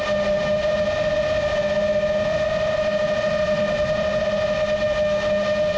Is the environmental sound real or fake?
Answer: real